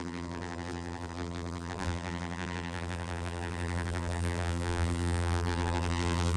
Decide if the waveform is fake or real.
fake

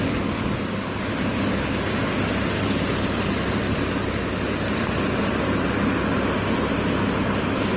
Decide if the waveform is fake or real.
real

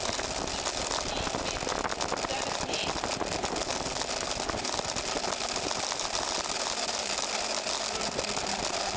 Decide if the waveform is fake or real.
real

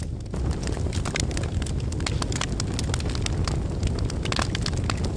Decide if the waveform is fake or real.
real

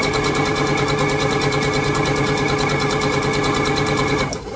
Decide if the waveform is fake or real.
fake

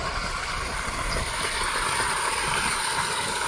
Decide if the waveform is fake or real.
real